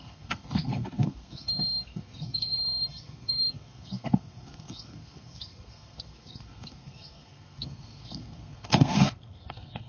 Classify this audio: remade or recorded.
remade